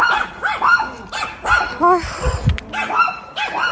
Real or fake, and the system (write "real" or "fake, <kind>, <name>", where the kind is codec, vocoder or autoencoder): real